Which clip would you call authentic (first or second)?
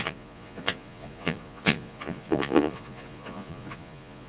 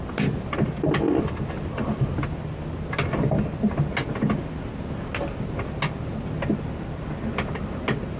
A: second